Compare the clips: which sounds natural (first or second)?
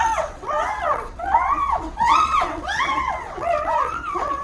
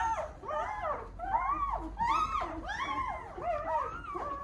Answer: second